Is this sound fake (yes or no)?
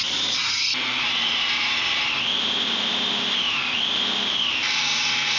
no